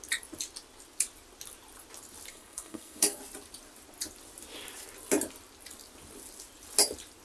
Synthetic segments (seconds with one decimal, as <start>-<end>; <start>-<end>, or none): 2.3-3.2